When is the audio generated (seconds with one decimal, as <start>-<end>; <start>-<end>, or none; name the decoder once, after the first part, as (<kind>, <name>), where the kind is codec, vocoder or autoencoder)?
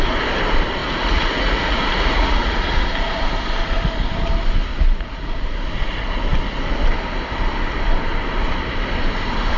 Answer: 0.8-2.9 (vocoder, Vocos); 4.7-5.3